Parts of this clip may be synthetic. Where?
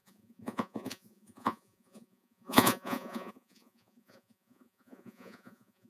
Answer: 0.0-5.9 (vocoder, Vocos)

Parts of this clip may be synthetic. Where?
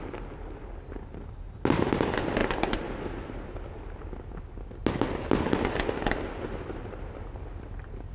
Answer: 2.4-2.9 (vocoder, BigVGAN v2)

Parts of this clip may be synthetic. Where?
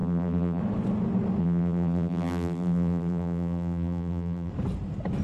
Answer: 0.0-0.6 (vocoder, BigVGAN v2); 1.4-4.5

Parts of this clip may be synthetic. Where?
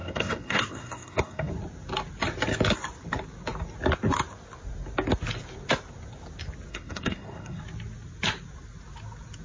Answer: 0.0-1.5 (codec, SNAC); 6.7-7.6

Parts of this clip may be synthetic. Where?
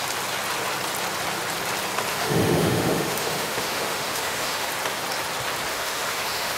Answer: 2.1-4.7 (autoencoder, DAC-VAE); 5.7-6.6